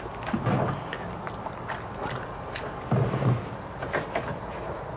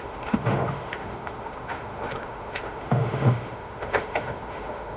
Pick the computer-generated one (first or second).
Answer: second